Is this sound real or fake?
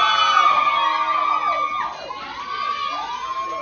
real